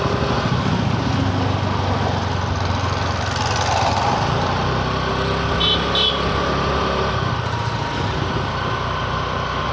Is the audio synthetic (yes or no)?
no